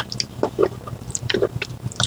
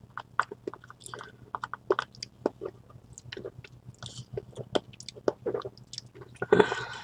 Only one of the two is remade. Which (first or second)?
first